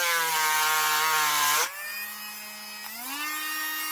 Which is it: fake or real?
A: real